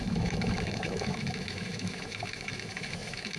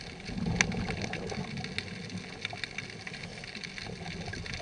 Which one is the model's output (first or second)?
first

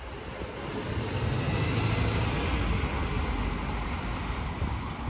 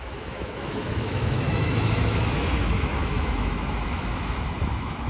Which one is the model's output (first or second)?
second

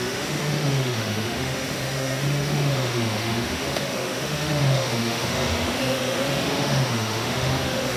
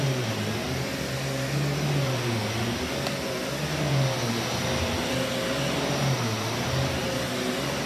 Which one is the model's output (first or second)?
first